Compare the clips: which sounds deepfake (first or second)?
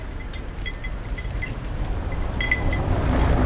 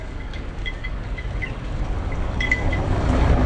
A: second